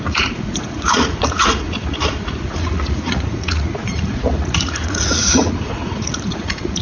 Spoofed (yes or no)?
yes